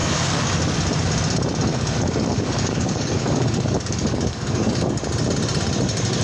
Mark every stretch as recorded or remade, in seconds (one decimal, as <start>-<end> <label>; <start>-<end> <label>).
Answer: 0.0-0.6 remade; 0.6-1.7 recorded; 1.7-5.0 remade; 5.0-6.2 recorded